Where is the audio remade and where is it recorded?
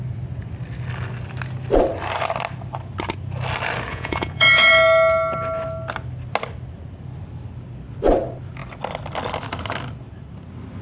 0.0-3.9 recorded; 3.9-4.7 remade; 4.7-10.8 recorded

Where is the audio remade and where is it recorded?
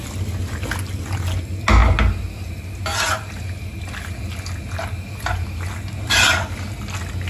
0.0-7.3 recorded